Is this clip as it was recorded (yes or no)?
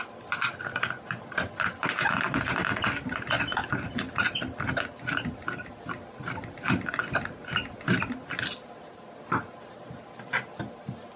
yes